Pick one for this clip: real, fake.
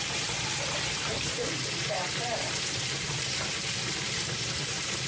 fake